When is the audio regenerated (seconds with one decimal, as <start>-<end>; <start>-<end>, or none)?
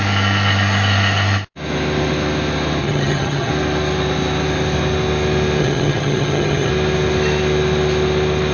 2.8-3.5; 5.6-6.7